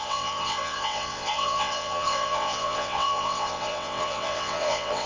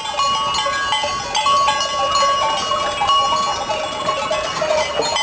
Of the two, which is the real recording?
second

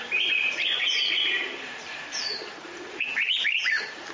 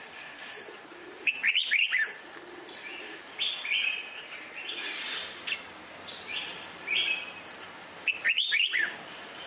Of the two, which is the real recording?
second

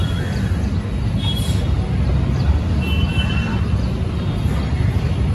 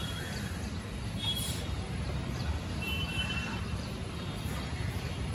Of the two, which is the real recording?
first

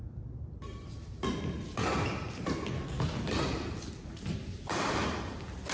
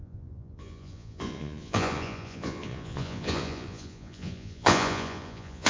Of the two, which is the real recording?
first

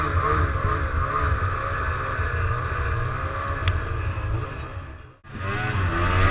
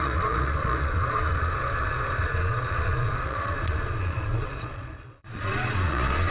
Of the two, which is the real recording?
first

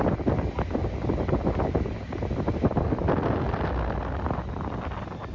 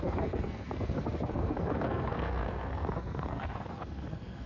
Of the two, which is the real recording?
first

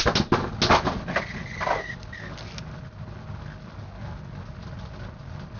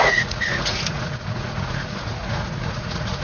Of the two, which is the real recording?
first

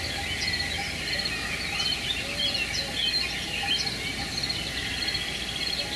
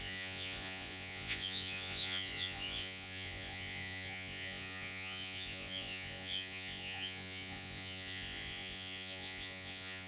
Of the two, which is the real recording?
first